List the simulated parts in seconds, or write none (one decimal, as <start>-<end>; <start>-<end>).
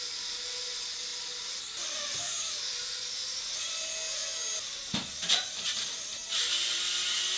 none